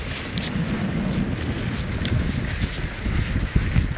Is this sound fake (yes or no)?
no